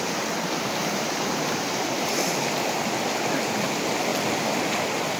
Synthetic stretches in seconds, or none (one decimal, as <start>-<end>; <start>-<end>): 0.8-2.3